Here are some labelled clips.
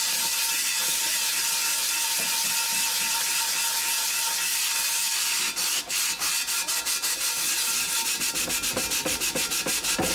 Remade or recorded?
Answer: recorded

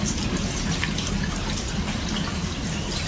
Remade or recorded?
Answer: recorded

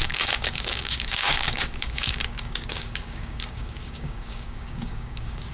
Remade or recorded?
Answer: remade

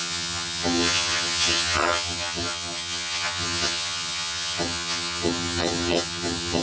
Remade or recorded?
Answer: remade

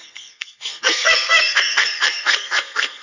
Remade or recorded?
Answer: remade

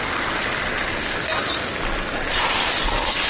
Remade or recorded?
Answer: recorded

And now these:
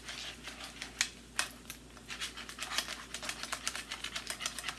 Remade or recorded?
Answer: recorded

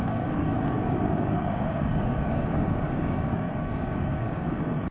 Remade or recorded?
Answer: remade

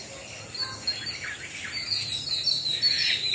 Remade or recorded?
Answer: recorded